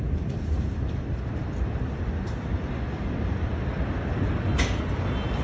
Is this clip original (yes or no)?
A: yes